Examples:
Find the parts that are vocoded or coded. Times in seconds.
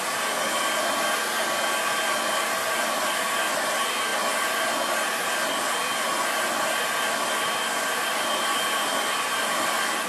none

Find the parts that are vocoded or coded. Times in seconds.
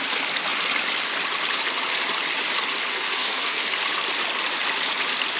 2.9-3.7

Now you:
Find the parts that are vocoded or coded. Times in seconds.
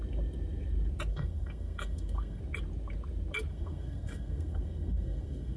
1.1-2.4; 3.5-5.6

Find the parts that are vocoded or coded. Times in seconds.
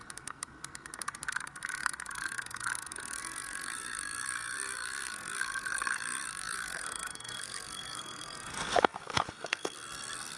0.0-10.4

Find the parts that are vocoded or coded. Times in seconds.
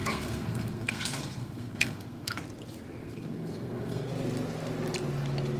0.0-2.4; 3.0-4.1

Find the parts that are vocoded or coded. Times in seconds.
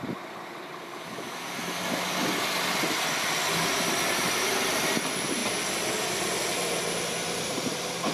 none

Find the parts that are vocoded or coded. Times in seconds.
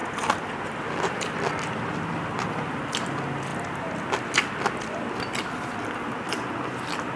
none